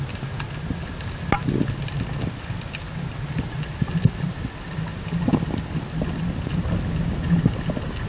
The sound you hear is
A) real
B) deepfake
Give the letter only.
A